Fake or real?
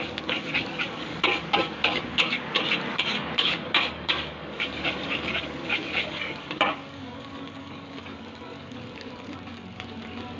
fake